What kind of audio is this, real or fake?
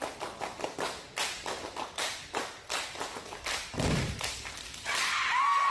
real